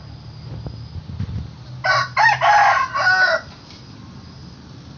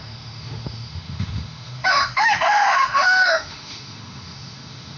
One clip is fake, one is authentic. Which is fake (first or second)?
second